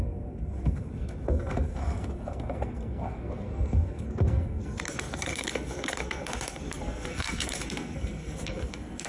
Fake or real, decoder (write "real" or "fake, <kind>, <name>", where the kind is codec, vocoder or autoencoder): fake, codec, SNAC